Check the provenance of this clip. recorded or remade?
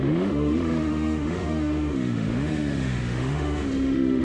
remade